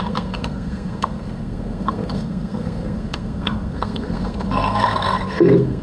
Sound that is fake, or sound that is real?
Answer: fake